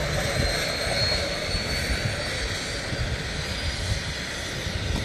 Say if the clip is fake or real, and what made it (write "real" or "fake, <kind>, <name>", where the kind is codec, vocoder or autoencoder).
real